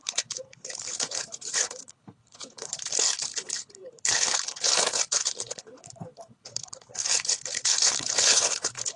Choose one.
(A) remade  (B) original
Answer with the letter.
A